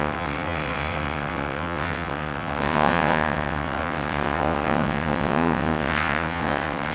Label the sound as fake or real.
fake